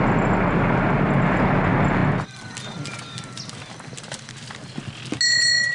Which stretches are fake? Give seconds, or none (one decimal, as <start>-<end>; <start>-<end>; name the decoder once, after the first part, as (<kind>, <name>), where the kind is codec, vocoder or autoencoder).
none